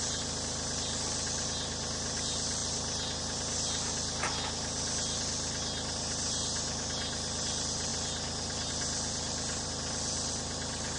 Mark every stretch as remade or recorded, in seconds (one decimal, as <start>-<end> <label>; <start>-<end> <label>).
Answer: 0.0-11.0 recorded